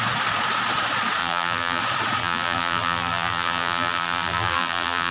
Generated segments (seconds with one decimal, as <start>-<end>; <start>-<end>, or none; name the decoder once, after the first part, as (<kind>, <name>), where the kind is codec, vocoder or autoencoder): 1.2-1.8 (vocoder, BigVGAN v2); 2.2-5.1

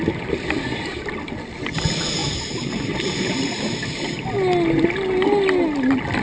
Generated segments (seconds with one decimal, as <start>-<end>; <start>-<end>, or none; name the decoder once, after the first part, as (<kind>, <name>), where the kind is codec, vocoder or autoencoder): 2.2-4.1 (vocoder, BigVGAN v2)

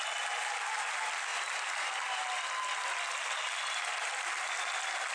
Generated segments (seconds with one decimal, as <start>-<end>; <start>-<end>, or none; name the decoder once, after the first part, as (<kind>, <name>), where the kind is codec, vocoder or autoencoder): none

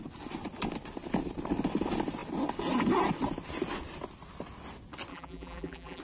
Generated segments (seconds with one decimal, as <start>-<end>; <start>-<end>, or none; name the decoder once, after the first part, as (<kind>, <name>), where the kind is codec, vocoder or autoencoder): 5.1-6.0 (vocoder, BigVGAN v2)

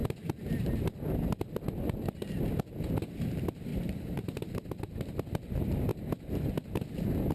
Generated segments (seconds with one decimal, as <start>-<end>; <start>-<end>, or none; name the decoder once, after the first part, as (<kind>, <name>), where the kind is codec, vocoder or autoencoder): 3.7-5.1 (vocoder, BigVGAN v2)

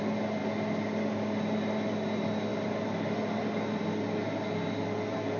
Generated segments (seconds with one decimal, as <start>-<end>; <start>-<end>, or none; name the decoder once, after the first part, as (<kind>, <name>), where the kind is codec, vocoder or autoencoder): 0.4-1.9 (vocoder, BigVGAN v2); 2.5-3.4

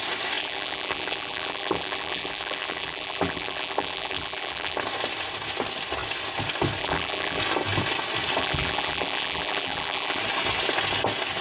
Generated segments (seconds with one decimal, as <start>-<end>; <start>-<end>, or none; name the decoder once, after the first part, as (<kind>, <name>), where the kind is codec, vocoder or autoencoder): 0.4-4.8 (vocoder, BigVGAN v2); 6.8-7.4; 8.4-10.2